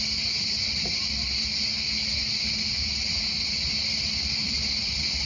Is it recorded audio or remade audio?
recorded